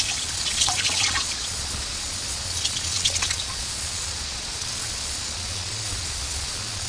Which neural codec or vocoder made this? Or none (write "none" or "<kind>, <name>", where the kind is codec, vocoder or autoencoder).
vocoder, Vocos